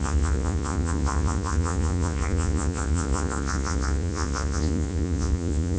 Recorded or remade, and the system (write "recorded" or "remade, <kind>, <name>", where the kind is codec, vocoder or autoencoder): remade, vocoder, Vocos